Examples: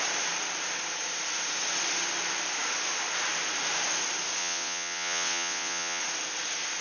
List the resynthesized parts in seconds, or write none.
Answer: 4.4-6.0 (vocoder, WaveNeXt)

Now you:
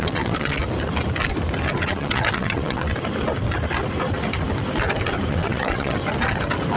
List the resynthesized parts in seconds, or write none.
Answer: 0.0-0.6 (vocoder, WaveNeXt); 1.8-2.9; 5.3-6.0

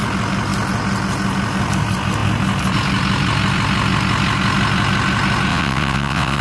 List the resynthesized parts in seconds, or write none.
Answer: 5.5-6.4 (vocoder, WaveNeXt)

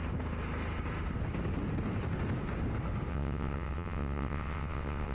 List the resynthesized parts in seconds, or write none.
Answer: 3.1-5.1 (vocoder, WaveNeXt)

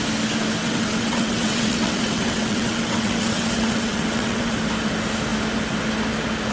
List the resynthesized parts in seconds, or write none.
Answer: 0.6-4.5 (vocoder, WaveNeXt)

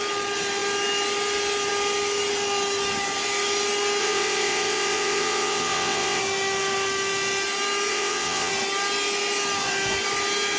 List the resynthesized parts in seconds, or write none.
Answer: 4.0-6.2 (vocoder, WaveNeXt); 7.9-8.5

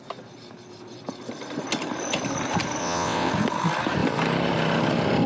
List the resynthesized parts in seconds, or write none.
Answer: 2.8-3.3 (vocoder, WaveNeXt)